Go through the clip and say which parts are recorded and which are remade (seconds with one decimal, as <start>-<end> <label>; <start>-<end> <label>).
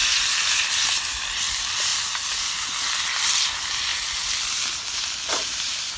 0.0-1.9 remade; 1.9-2.5 recorded; 2.5-3.9 remade; 3.9-5.3 recorded; 5.3-6.0 remade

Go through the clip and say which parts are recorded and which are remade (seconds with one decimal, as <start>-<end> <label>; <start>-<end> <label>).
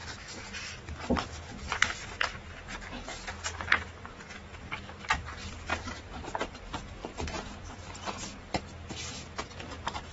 0.0-5.7 recorded; 5.7-6.4 remade; 6.4-7.0 recorded; 7.0-8.6 remade; 8.6-10.1 recorded